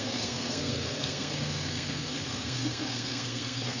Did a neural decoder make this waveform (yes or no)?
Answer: yes